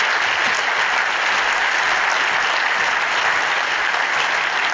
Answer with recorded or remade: recorded